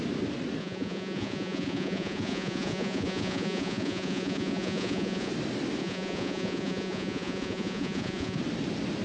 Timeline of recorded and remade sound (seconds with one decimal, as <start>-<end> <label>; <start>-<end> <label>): 0.0-0.6 recorded; 0.6-5.3 remade; 5.3-5.8 recorded; 5.8-8.4 remade; 8.4-9.0 recorded